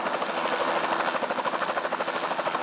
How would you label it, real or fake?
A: real